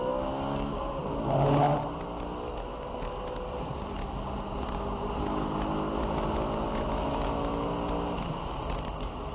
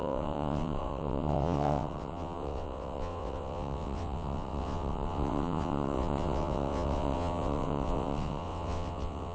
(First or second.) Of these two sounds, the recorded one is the first